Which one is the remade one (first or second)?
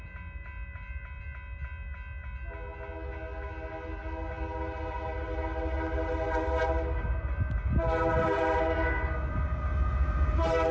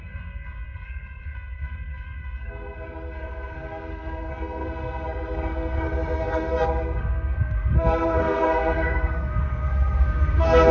second